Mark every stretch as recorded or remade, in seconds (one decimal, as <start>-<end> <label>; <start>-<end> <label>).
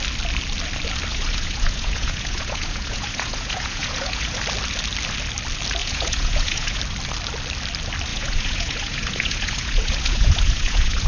0.0-1.1 recorded; 1.1-4.4 remade; 4.4-5.8 recorded; 5.8-6.8 remade; 6.8-8.1 recorded; 8.1-11.1 remade